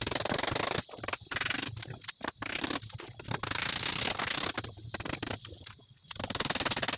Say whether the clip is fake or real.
real